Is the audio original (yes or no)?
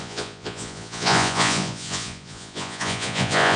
no